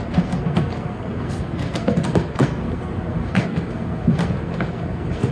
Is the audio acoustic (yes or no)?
no